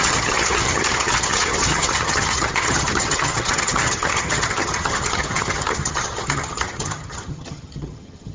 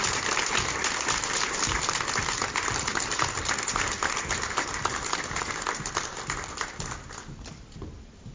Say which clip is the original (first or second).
second